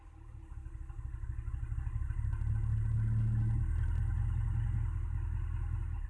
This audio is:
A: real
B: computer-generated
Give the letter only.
A